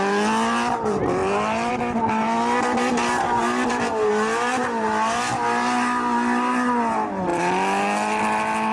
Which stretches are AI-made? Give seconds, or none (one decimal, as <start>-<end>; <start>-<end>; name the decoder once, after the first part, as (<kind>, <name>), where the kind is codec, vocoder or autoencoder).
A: none

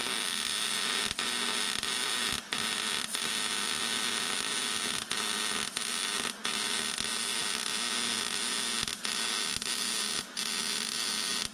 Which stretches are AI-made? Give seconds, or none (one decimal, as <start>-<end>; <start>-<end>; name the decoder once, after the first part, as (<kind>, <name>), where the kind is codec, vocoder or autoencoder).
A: none